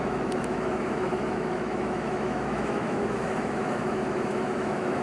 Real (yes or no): no